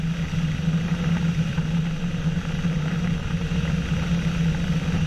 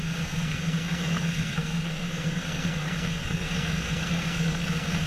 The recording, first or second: first